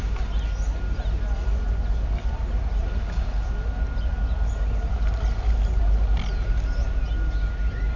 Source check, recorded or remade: recorded